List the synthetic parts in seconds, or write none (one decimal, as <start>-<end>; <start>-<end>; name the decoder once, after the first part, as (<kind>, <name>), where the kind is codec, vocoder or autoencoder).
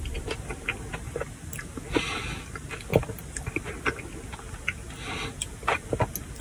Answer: none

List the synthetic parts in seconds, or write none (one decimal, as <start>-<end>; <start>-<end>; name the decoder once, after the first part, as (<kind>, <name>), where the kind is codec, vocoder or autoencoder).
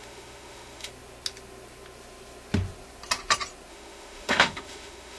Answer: 0.0-0.9 (autoencoder, DAC-VAE); 3.7-5.2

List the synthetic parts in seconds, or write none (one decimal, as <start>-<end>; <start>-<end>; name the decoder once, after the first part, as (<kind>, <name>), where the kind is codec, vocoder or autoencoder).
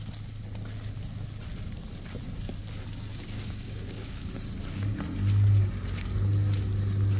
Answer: 3.1-4.3 (codec, DAC)